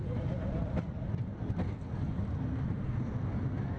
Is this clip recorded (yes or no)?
yes